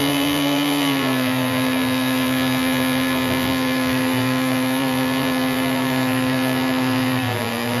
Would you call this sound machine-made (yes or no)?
yes